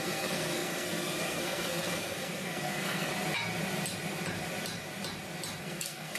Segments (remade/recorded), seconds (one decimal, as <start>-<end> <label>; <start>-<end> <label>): 0.0-3.1 remade; 3.1-5.6 recorded; 5.6-6.2 remade